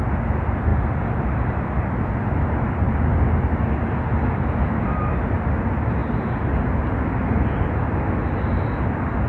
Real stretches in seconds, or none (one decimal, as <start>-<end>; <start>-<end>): 0.0-9.3